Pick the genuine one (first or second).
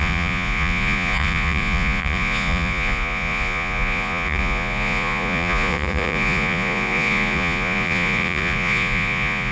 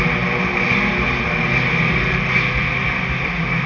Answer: second